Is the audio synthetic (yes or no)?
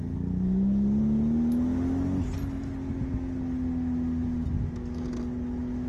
no